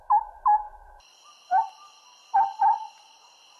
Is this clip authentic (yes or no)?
yes